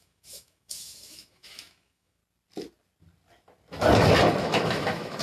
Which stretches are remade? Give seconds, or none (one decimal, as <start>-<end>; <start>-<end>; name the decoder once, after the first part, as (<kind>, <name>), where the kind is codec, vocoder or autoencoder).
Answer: 0.0-2.2 (autoencoder, DAC-VAE); 4.4-5.2

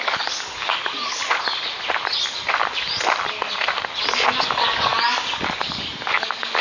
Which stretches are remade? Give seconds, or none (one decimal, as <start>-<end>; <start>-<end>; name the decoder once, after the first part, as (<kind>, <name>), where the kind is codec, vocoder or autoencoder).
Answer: 0.0-1.2 (codec, DAC); 4.4-6.6

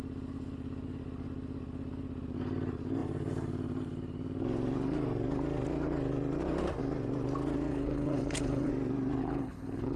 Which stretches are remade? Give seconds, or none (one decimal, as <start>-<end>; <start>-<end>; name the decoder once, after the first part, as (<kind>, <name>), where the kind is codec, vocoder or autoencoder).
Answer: 7.7-8.7 (codec, HILCodec); 9.2-10.0

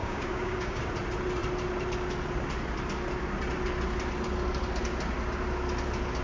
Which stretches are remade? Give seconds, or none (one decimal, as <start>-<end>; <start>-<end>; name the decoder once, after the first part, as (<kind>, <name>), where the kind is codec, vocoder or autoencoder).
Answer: 0.0-0.8 (codec, DAC)

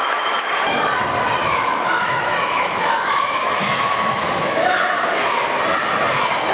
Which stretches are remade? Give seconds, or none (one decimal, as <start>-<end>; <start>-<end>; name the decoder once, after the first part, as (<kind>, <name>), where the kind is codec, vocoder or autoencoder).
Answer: 0.0-0.5 (autoencoder, DAC-VAE); 1.4-5.3

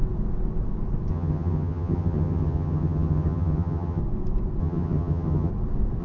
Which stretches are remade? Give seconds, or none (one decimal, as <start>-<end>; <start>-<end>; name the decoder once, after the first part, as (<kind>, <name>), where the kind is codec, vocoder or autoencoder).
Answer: 1.1-4.0 (vocoder, HiFi-GAN); 4.6-5.5

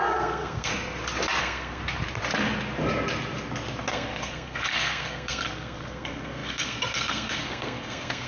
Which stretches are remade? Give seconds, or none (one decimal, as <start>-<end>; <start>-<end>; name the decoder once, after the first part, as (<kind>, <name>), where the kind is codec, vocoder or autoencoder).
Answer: 0.0-0.7 (codec, SNAC); 1.4-1.8; 3.9-8.3